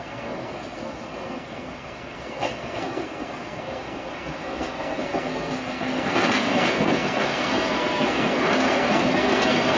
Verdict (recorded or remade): remade